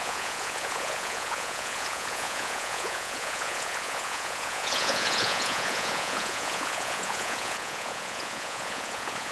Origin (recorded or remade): remade